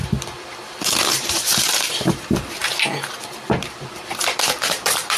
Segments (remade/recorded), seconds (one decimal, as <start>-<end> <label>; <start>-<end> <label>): 0.0-0.8 recorded; 0.8-2.6 remade; 2.6-3.3 recorded; 3.3-5.2 remade